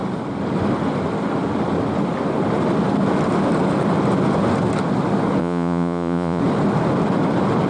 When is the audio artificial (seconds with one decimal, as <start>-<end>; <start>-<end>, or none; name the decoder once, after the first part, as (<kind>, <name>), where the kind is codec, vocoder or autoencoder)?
5.4-6.4 (vocoder, Vocos)

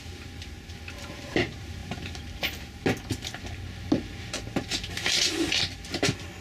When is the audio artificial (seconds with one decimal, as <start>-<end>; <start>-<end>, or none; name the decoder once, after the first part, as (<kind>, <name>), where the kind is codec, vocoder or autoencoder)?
none

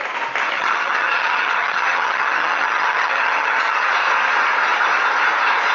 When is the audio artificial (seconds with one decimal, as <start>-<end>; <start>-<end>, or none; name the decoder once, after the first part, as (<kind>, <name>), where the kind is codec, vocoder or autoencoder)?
0.5-3.9 (vocoder, HiFi-GAN)

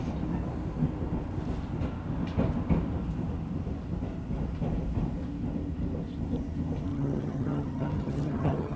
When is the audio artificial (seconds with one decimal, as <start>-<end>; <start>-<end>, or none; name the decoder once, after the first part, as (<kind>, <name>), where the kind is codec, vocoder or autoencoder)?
6.9-8.8 (vocoder, HiFi-GAN)

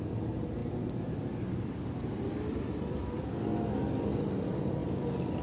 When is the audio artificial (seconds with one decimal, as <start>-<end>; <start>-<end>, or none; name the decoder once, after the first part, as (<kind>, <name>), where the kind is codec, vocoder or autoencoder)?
none